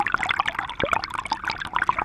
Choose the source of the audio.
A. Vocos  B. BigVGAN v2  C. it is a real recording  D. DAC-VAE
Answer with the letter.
C